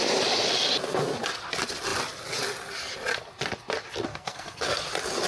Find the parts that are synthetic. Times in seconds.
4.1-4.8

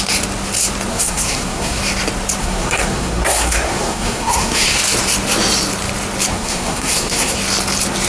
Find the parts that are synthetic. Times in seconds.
0.9-1.8; 2.4-4.8; 6.3-7.4

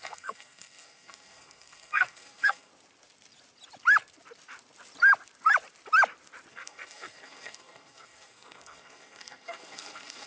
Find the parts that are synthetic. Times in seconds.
0.0-2.7; 6.5-10.3

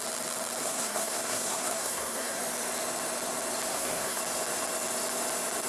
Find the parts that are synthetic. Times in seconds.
0.6-2.4; 3.7-4.2